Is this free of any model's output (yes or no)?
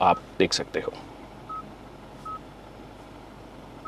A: yes